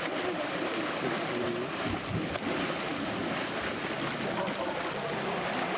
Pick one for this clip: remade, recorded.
recorded